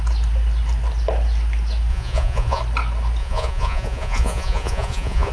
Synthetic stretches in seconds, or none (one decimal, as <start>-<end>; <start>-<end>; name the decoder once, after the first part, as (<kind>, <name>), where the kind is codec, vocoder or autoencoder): 1.9-2.6 (vocoder, Vocos); 3.2-5.3